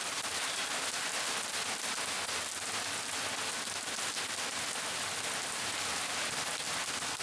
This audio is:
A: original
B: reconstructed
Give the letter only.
A